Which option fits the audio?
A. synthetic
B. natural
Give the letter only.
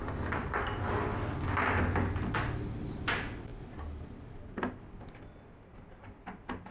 B